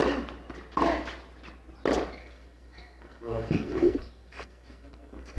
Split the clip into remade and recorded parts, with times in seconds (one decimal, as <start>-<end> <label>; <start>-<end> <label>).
0.0-2.2 recorded; 2.2-5.4 remade